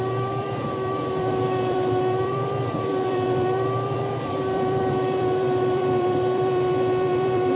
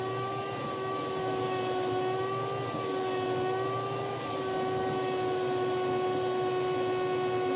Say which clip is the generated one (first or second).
first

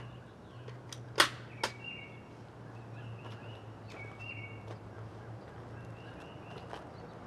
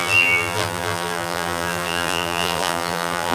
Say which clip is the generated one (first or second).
second